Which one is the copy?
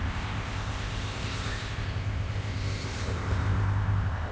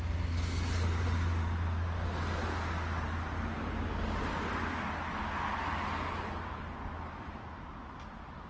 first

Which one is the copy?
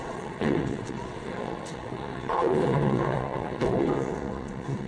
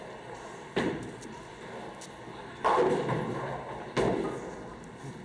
first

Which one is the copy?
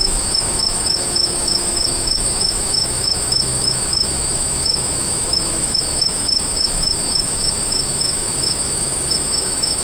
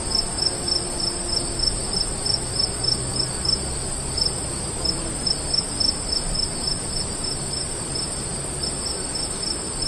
first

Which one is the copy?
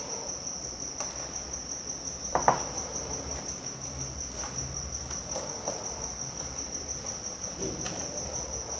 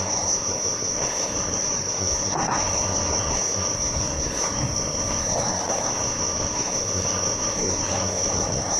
second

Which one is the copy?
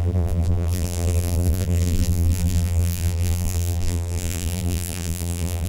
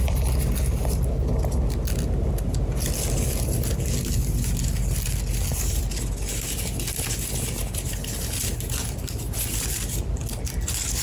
first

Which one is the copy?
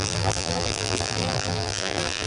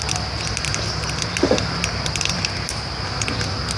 first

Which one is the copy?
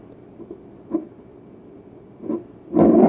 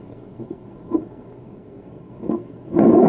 second